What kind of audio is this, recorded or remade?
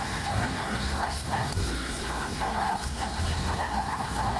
remade